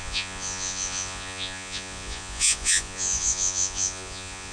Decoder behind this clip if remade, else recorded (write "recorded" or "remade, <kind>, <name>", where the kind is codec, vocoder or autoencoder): remade, vocoder, Vocos